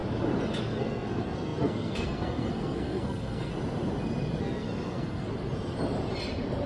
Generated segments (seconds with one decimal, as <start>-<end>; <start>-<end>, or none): 0.6-3.5; 4.4-5.3